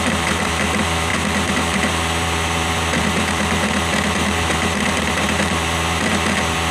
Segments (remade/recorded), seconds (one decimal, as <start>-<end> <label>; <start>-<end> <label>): 0.0-6.7 remade